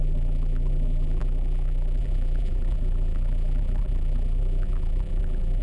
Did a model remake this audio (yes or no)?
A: yes